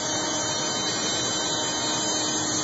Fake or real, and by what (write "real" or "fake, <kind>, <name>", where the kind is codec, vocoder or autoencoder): real